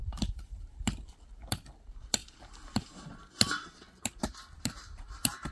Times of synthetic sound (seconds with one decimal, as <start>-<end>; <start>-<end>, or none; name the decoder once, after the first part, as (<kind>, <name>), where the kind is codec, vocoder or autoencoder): 0.0-0.8 (vocoder, BigVGAN v2)